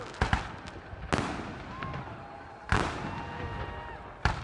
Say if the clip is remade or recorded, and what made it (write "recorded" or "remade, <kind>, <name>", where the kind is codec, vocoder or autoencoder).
recorded